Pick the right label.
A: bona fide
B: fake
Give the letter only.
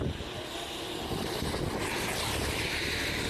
A